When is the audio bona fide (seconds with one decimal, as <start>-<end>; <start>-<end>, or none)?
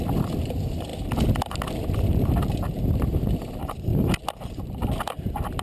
0.9-2.9; 3.9-4.5